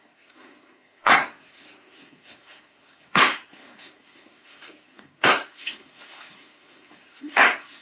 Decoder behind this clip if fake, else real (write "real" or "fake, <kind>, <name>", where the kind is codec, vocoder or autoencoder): fake, codec, SNAC